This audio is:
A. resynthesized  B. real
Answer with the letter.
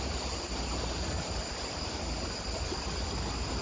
B